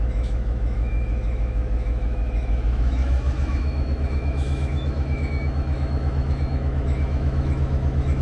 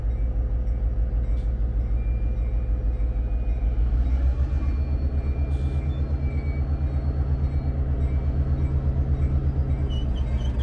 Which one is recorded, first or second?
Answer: second